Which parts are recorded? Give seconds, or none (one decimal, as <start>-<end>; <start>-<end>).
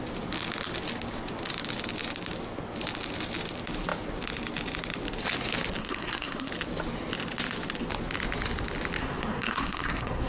0.0-5.8; 6.5-9.0